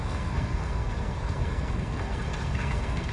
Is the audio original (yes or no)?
no